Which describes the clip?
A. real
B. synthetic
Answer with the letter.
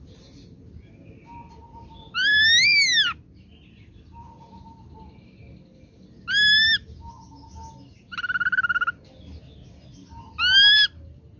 A